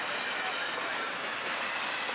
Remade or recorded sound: recorded